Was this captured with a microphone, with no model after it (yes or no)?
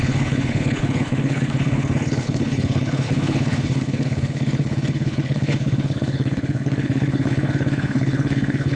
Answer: no